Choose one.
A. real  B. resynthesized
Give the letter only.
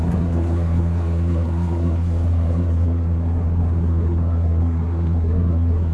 B